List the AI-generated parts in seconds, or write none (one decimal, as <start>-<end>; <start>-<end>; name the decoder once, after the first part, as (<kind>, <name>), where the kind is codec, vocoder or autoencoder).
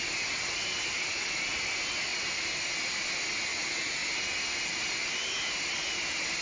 3.5-4.0 (vocoder, Vocos)